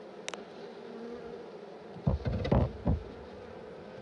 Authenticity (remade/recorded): recorded